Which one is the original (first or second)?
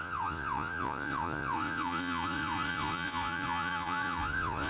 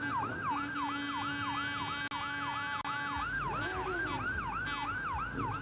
second